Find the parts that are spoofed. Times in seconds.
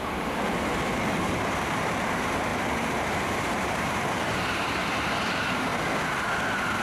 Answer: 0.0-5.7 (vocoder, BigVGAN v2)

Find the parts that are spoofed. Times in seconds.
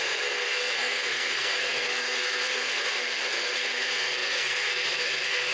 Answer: 0.0-5.5 (codec, SNAC)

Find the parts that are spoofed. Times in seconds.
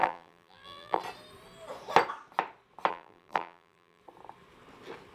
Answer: 0.0-1.0 (vocoder, BigVGAN v2); 2.9-4.0